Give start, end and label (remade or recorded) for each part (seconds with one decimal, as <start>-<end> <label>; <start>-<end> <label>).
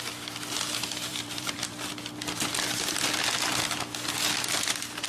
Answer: 0.0-1.1 recorded; 1.1-1.9 remade; 1.9-5.1 recorded